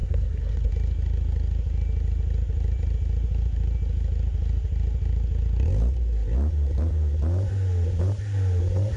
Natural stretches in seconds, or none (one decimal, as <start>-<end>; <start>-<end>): 0.7-9.0